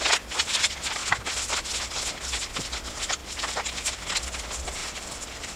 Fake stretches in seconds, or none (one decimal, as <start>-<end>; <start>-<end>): 3.2-3.9; 4.8-5.6